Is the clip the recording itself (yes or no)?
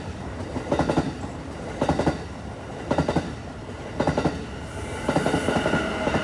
yes